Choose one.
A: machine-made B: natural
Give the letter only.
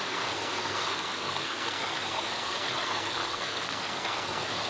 A